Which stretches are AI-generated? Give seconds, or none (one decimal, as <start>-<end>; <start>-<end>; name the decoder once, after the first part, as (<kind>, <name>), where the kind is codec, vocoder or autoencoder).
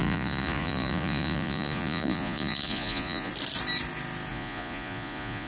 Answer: 0.0-3.3 (vocoder, Vocos); 4.3-5.5